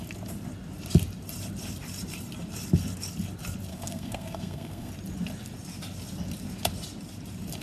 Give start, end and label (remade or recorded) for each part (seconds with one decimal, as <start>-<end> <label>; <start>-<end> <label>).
0.0-3.7 recorded; 3.7-4.9 remade; 4.9-7.6 recorded